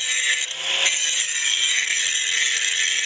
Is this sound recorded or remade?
recorded